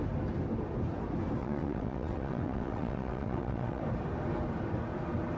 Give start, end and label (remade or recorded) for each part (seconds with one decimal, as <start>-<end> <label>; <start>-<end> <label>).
0.0-1.4 recorded; 1.4-3.8 remade; 3.8-5.4 recorded